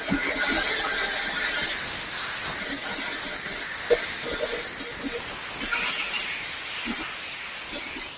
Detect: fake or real real